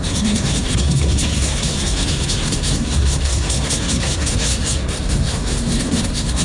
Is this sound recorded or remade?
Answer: remade